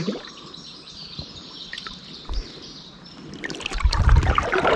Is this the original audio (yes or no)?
no